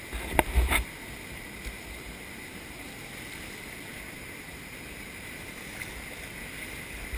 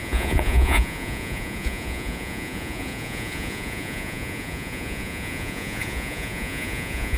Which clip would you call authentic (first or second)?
first